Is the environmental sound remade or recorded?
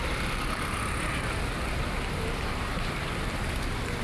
recorded